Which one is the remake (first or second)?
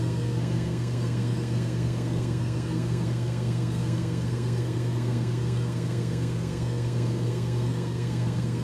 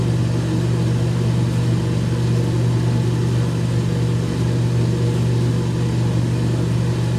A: first